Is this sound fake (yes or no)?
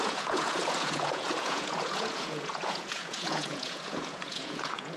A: yes